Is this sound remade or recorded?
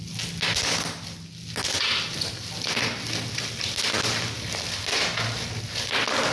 recorded